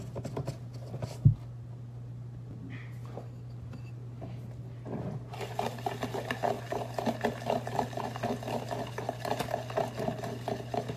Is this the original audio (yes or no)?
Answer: yes